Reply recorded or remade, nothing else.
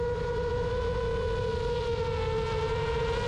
recorded